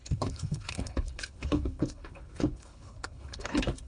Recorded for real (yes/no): no